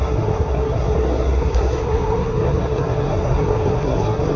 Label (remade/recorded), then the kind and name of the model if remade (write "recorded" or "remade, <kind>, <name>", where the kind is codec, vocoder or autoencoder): remade, codec, SNAC